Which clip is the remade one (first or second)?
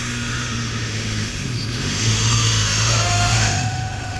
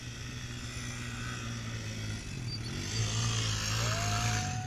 first